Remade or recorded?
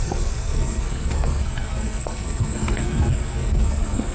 remade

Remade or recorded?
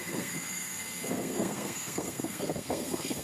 remade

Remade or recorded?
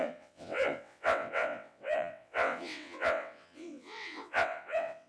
remade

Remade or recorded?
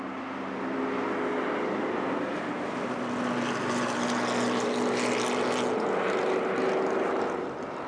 recorded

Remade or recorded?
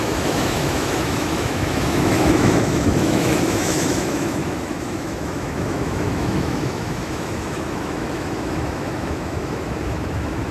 remade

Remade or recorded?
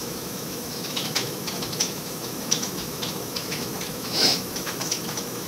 remade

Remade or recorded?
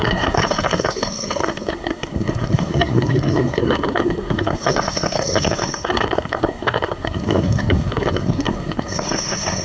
remade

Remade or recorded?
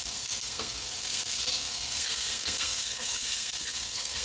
remade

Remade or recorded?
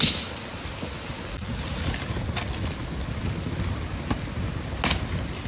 recorded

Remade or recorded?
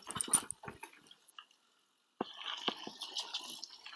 recorded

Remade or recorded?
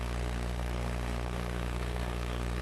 remade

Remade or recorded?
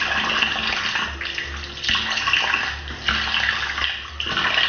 recorded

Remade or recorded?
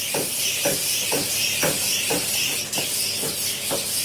recorded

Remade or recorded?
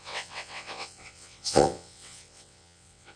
remade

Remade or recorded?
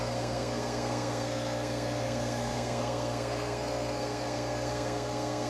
remade